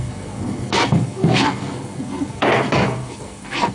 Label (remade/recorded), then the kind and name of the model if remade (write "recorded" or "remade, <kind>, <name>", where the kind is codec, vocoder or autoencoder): remade, codec, SNAC